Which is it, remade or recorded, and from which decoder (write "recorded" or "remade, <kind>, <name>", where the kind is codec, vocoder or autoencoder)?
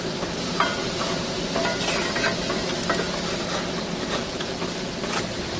recorded